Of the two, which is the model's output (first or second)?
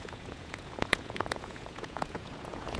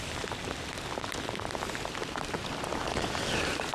first